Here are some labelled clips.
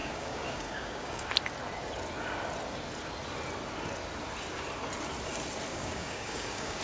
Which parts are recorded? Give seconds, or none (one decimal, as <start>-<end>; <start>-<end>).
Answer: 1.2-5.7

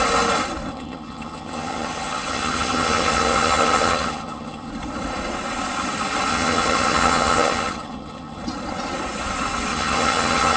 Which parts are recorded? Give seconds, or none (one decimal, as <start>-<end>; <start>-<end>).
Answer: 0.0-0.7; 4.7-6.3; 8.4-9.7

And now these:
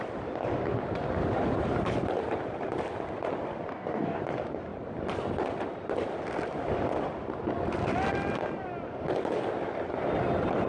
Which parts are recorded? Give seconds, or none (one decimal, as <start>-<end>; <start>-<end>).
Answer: 0.0-3.7; 4.2-10.7

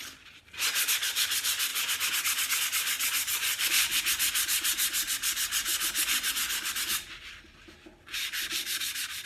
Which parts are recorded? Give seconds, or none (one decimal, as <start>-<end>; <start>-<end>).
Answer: 0.0-9.3

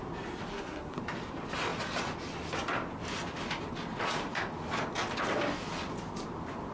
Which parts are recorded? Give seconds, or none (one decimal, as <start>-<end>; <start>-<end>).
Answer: 0.0-0.5; 1.0-6.7